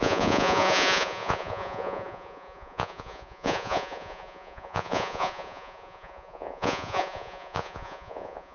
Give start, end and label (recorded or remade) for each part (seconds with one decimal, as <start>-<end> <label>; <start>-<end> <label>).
0.0-8.5 remade